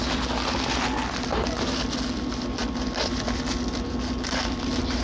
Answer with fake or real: real